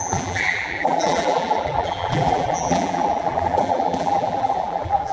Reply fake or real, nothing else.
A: fake